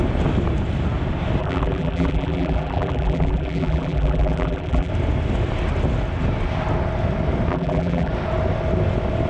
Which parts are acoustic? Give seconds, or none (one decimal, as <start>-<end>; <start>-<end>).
0.0-1.4; 4.9-7.5; 8.1-9.3